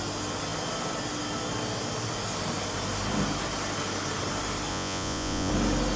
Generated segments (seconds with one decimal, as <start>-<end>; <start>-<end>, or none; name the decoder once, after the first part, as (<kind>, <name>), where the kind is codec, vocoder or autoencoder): 4.7-5.5 (vocoder, Vocos)